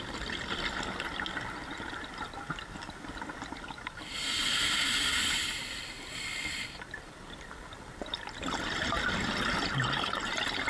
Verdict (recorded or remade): recorded